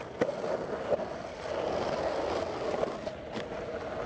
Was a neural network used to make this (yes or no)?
no